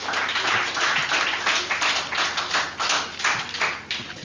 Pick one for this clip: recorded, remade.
recorded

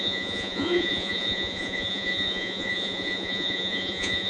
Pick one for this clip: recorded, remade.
remade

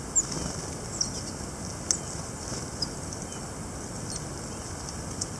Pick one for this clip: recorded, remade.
recorded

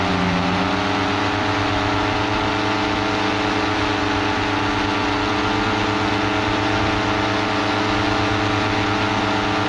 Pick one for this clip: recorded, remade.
recorded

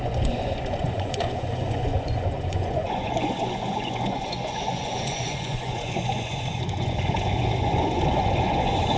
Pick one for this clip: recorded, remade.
remade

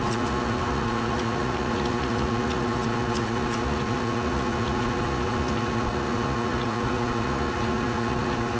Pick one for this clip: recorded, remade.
remade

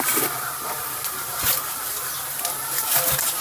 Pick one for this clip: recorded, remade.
recorded